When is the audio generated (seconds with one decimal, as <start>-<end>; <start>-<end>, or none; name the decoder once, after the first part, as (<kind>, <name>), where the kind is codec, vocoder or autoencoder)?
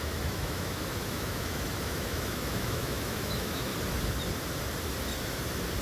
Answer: 0.0-3.7 (autoencoder, DAC-VAE)